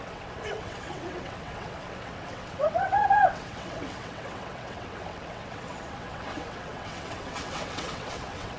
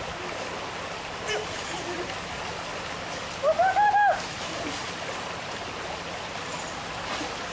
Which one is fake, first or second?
first